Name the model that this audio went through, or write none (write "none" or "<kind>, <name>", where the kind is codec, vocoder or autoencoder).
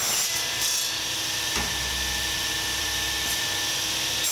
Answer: vocoder, BigVGAN v2